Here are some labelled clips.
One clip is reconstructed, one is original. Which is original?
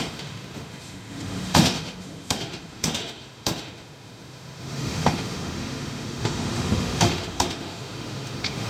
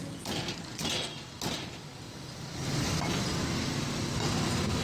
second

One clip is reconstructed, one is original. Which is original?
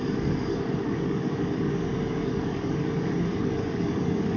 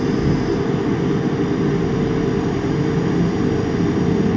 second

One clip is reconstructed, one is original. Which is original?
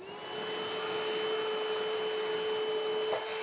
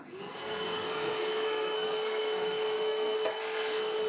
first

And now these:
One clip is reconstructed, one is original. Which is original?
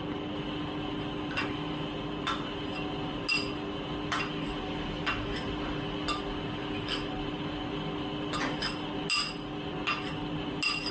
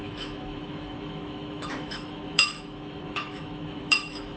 first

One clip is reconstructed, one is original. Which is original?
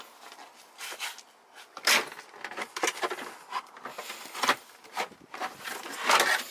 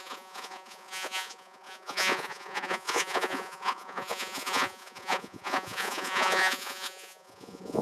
first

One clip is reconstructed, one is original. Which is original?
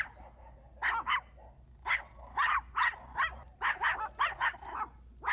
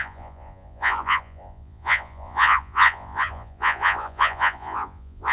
first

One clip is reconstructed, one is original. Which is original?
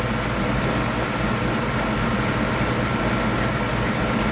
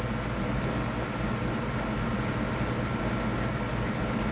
second